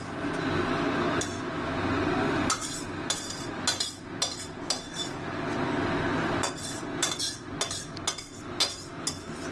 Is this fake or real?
real